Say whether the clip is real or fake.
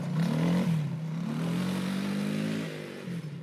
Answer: real